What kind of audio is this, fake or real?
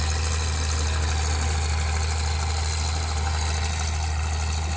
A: real